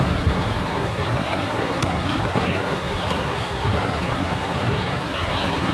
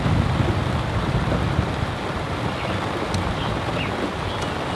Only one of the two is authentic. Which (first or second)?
second